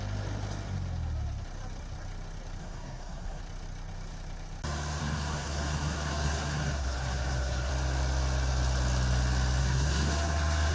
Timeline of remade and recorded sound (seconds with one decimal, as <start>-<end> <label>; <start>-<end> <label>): 0.0-2.6 recorded; 2.6-3.4 remade; 3.4-5.0 recorded; 5.0-7.7 remade; 7.7-9.6 recorded; 9.6-10.7 remade